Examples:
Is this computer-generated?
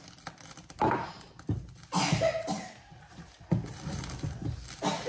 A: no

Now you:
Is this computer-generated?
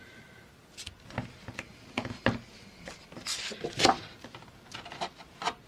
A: no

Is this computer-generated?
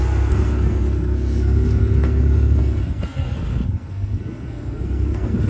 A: yes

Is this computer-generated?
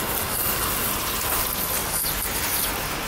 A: no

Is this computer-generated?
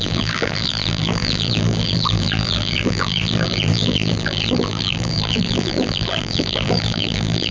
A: yes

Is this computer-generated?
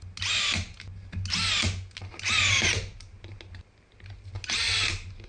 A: no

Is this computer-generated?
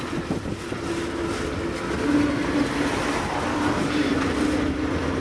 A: no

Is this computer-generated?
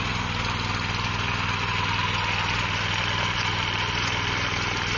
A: no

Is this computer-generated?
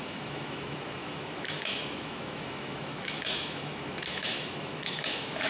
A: yes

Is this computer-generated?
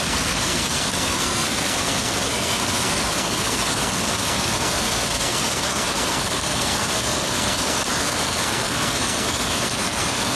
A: yes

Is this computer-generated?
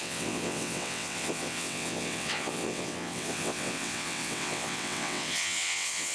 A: yes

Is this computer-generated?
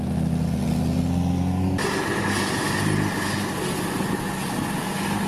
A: no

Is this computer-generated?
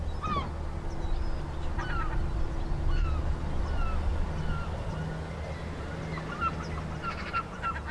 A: no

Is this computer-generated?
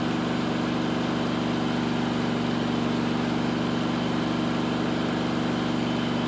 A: no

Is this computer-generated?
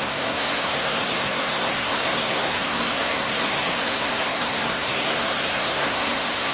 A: yes